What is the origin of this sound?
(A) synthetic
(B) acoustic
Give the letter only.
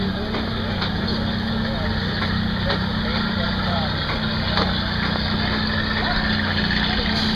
B